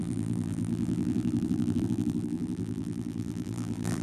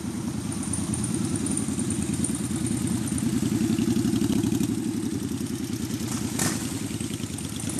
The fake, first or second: first